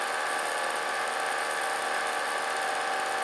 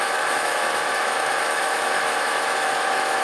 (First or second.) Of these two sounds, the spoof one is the second